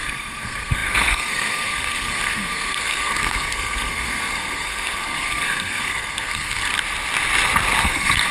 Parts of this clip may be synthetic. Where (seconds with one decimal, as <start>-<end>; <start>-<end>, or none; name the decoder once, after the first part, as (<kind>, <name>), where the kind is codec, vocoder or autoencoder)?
0.0-6.7 (codec, SNAC); 7.8-8.3